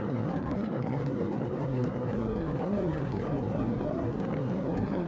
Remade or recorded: remade